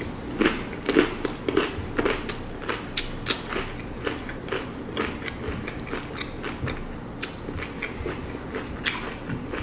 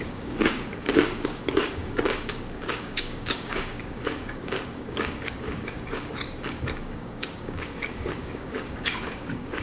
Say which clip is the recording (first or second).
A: first